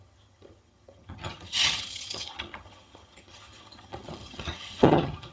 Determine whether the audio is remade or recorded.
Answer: remade